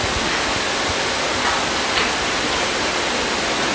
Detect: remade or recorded recorded